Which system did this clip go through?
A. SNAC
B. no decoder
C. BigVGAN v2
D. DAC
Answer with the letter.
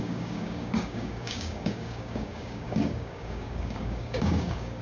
D